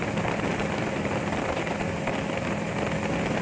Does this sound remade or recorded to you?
recorded